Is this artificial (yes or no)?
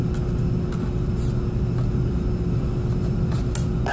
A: no